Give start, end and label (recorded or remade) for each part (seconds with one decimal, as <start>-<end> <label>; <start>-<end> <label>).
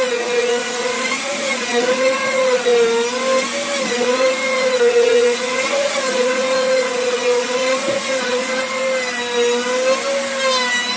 0.0-2.7 remade; 2.7-3.8 recorded; 3.8-8.8 remade; 8.8-11.0 recorded